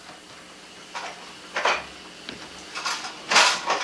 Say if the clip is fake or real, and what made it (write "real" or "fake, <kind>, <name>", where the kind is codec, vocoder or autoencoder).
real